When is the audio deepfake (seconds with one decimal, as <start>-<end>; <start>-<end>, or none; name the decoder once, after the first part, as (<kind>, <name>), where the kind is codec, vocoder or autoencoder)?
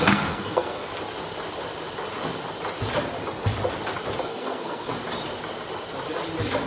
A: 0.0-0.9 (codec, SNAC); 4.2-4.9